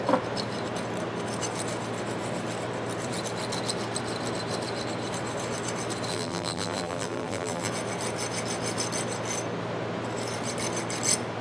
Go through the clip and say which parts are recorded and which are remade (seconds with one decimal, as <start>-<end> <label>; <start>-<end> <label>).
0.0-6.1 recorded; 6.1-7.7 remade; 7.7-11.4 recorded